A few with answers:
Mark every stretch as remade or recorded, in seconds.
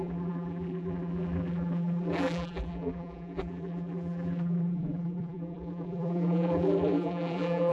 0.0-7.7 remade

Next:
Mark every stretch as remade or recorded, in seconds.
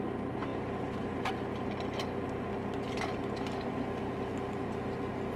0.0-0.5 recorded; 0.5-1.3 remade; 1.3-5.4 recorded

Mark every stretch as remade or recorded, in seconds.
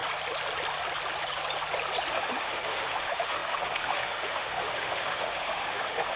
0.0-2.1 recorded; 2.1-6.2 remade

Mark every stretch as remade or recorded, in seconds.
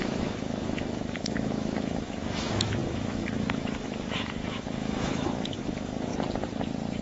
0.0-6.1 remade; 6.1-7.0 recorded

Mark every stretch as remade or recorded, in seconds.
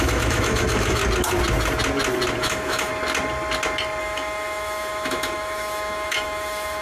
0.0-1.0 remade; 1.0-2.4 recorded; 2.4-2.9 remade; 2.9-4.0 recorded; 4.0-6.8 remade